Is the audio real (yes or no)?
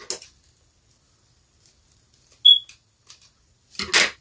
yes